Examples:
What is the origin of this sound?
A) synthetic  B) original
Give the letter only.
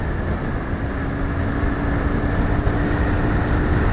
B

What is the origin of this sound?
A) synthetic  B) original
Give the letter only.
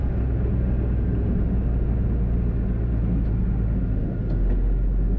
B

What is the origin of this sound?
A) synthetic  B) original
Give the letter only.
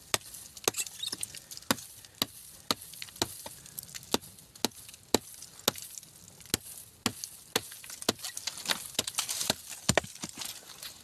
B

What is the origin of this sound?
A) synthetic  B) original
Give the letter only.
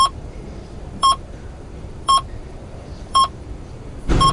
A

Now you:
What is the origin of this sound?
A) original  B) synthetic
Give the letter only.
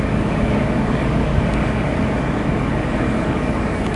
B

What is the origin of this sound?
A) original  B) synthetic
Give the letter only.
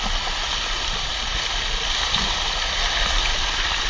B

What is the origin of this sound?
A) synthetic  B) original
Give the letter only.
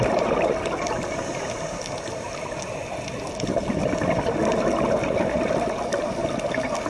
B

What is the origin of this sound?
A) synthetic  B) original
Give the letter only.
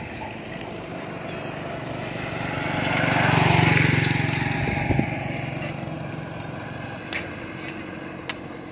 B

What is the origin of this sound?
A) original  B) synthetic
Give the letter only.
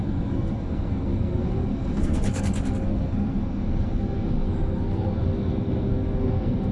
B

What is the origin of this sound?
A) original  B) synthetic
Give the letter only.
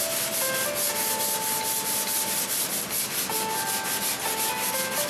A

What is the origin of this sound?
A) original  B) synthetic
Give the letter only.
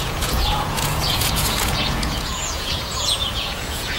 B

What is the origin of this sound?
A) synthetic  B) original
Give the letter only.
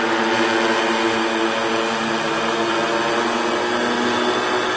B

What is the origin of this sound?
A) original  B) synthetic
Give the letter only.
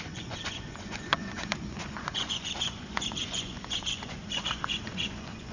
B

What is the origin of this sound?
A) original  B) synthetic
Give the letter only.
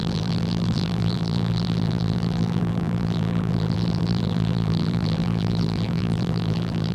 B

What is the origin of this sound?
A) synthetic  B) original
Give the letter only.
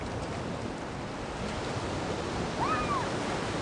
B